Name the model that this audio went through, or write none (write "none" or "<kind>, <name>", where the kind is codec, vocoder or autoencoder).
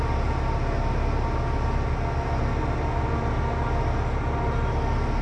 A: none